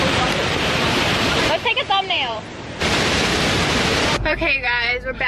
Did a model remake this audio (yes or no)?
yes